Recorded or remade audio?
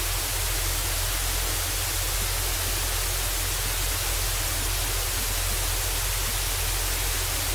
recorded